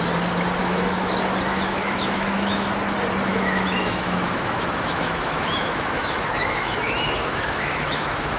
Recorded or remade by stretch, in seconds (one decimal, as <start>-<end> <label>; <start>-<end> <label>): 0.0-0.6 recorded; 0.6-1.1 remade; 1.1-1.5 recorded; 1.5-2.7 remade; 2.7-3.3 recorded; 3.3-8.4 remade